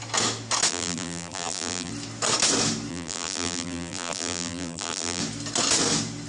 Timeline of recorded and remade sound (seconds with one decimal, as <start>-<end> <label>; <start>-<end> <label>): 0.0-0.7 recorded; 0.7-1.9 remade; 1.9-2.9 recorded; 2.9-5.2 remade; 5.2-6.3 recorded